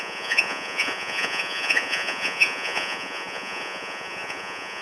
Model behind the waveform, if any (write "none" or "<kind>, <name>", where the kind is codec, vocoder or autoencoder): vocoder, Vocos